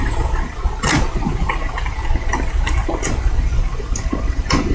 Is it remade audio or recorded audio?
remade